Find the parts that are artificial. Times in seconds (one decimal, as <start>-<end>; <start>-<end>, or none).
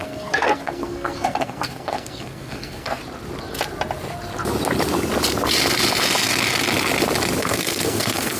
0.0-3.0; 7.4-8.4